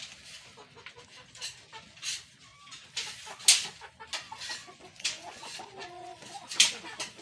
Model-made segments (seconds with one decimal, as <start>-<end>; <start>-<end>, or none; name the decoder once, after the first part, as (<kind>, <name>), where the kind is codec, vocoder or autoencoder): 4.6-6.8 (vocoder, Vocos)